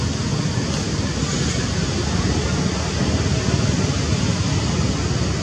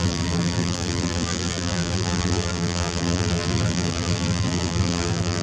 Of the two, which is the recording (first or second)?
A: first